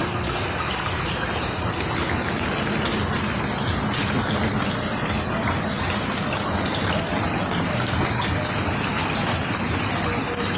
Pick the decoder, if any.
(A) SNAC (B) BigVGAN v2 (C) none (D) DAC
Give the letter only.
C